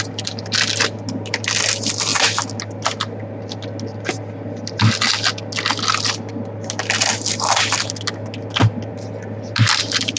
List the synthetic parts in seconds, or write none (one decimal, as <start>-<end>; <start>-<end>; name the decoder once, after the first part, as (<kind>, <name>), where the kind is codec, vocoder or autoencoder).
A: none